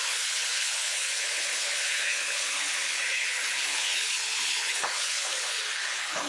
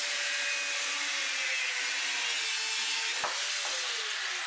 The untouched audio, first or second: second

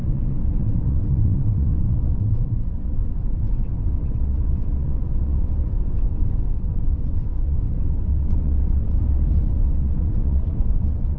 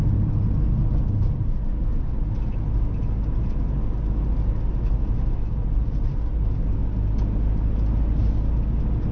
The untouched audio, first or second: second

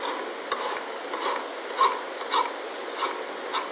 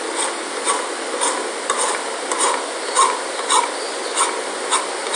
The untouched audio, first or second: first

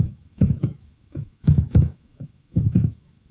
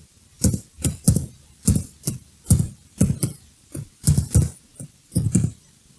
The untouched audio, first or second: second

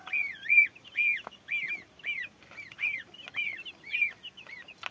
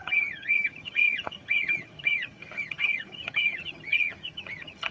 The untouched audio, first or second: first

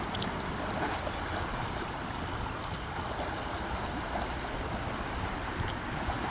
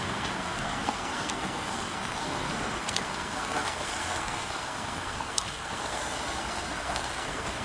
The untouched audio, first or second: first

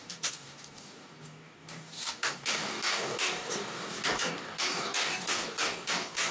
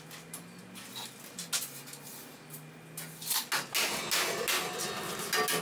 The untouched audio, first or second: second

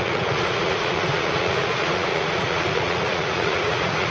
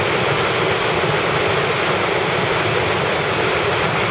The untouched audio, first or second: second